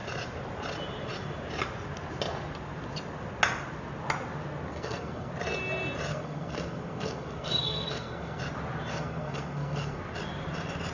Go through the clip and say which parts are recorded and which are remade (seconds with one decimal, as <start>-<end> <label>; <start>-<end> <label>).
0.0-4.7 recorded; 4.7-5.3 remade; 5.3-6.1 recorded; 6.1-8.4 remade; 8.4-8.9 recorded; 8.9-10.0 remade; 10.0-10.9 recorded